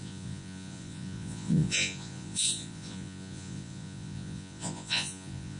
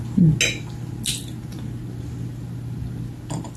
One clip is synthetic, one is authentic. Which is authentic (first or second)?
second